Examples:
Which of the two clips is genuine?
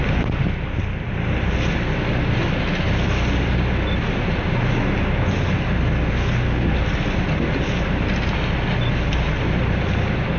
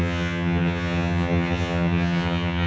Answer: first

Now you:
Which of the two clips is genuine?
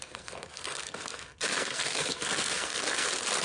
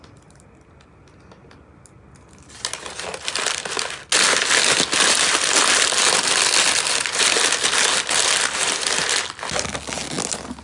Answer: second